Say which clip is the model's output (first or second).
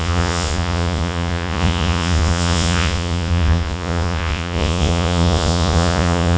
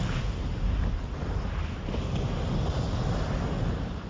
first